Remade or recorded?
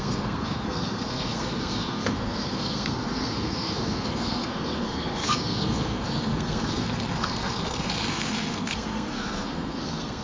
remade